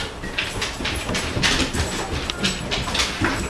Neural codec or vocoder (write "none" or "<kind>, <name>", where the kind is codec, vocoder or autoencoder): none